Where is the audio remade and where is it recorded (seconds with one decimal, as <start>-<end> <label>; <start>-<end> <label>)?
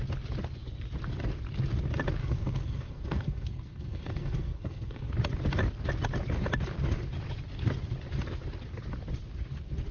0.0-2.2 recorded; 2.2-5.1 remade; 5.1-9.9 recorded